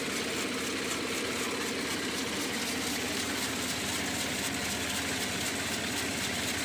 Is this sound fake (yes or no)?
no